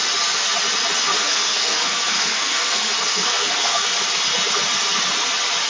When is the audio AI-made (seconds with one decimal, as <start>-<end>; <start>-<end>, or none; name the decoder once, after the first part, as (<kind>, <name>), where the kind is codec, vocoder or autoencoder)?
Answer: 1.1-4.0 (codec, SNAC)